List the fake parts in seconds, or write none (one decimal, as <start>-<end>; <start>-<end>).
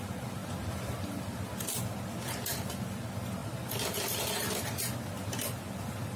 none